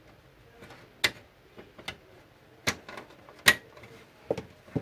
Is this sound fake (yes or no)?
no